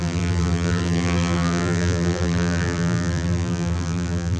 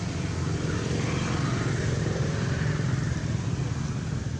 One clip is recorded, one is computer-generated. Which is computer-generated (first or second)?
first